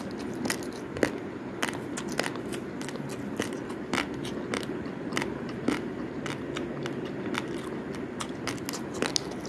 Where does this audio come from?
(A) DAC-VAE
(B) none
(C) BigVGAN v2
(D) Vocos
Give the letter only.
B